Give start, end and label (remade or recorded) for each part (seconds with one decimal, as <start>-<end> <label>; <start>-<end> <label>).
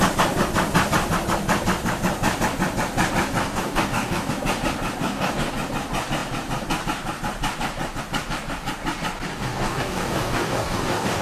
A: 0.0-3.4 recorded; 3.4-4.3 remade; 4.3-5.0 recorded; 5.0-5.5 remade; 5.5-9.3 recorded; 9.3-11.2 remade